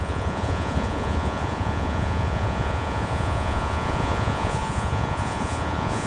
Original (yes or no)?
no